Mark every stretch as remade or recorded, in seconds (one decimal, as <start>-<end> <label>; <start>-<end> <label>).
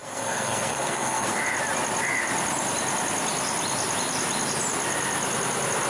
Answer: 0.0-1.4 remade; 1.4-5.9 recorded